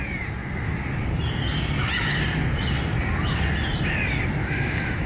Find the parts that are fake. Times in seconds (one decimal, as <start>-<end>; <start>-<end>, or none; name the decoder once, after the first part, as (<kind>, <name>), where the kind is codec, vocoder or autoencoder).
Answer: 4.4-5.1 (autoencoder, DAC-VAE)